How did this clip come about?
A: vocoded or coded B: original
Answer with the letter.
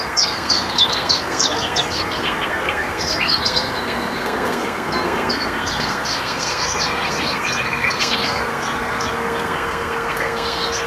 A